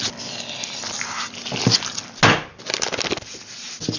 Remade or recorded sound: recorded